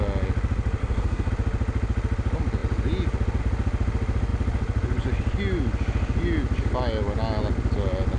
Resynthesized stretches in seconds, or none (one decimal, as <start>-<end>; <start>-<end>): 0.8-1.3